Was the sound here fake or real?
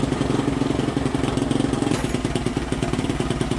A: real